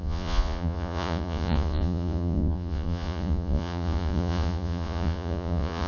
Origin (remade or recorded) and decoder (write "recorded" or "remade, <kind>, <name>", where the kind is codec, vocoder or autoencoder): remade, vocoder, Vocos